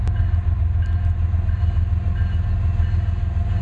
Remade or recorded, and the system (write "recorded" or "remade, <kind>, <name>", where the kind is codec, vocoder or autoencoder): recorded